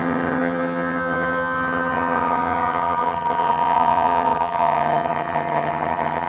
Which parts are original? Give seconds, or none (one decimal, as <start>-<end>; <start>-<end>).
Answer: none

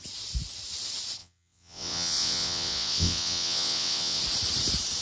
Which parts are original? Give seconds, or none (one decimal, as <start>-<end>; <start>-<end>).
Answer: 0.0-1.2; 4.2-5.0

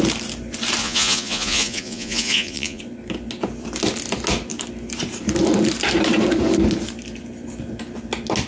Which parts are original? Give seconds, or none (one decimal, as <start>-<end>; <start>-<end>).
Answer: 0.0-0.8; 2.8-8.5

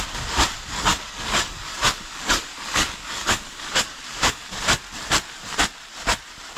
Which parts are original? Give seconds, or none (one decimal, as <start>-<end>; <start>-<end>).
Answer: 0.0-0.5; 4.5-6.6

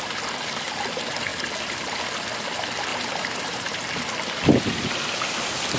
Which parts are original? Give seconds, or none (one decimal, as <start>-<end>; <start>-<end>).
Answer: 0.0-2.9; 3.8-5.8